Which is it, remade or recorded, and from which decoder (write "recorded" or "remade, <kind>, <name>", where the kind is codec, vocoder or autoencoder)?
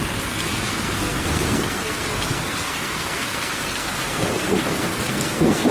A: remade, codec, SNAC